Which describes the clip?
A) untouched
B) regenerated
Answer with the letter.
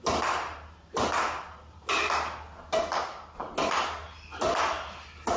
A